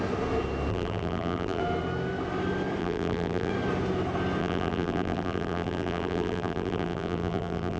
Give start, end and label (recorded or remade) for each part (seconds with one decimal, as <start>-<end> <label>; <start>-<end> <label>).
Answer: 0.0-0.7 recorded; 0.7-1.6 remade; 1.6-2.8 recorded; 2.8-3.5 remade; 3.5-4.4 recorded; 4.4-7.8 remade